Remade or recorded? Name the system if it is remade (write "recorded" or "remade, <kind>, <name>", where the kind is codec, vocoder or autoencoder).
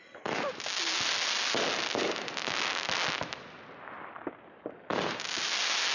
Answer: recorded